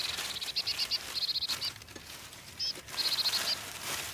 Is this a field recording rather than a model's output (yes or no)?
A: yes